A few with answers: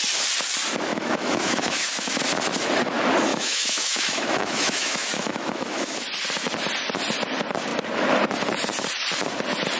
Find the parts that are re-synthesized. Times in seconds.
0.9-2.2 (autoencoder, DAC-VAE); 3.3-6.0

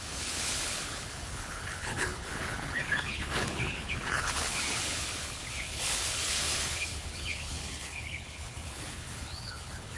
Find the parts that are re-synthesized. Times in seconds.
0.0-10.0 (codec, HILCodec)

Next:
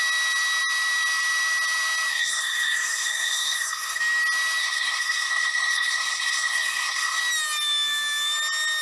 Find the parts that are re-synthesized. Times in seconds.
2.1-4.0 (codec, SNAC); 4.6-7.2